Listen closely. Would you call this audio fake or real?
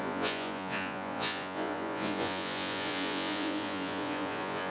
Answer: fake